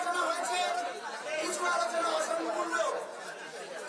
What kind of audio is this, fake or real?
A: real